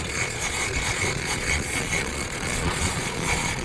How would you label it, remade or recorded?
remade